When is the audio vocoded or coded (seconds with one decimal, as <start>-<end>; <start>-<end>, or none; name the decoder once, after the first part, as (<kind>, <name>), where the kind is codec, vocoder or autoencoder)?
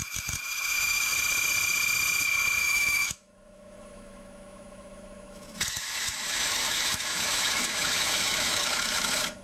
0.0-1.1 (autoencoder, DAC-VAE); 2.6-9.4